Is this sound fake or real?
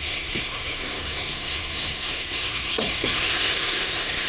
fake